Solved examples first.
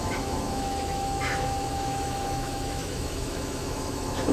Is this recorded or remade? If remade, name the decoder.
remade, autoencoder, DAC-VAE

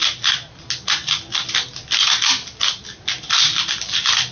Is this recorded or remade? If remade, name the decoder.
recorded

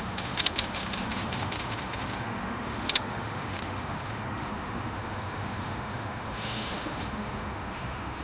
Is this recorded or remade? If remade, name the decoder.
remade, autoencoder, DAC-VAE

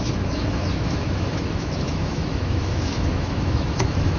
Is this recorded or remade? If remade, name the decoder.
remade, autoencoder, DAC-VAE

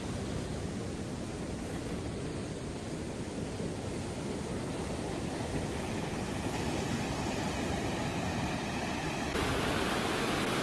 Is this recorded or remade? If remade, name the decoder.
recorded